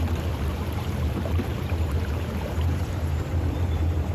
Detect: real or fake fake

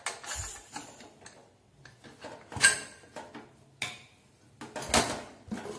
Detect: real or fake real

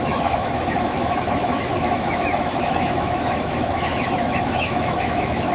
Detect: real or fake fake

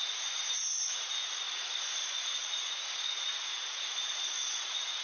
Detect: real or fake fake